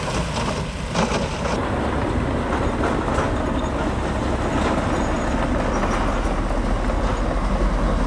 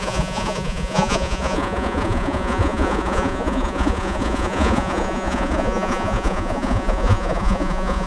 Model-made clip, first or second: second